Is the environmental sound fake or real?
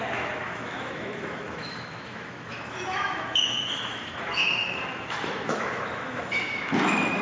fake